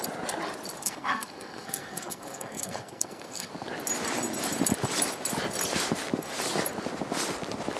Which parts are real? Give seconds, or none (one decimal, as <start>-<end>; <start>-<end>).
0.0-0.8; 3.5-7.8